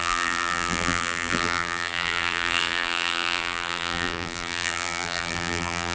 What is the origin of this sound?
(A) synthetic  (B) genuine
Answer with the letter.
A